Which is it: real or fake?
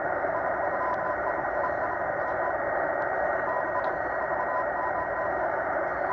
fake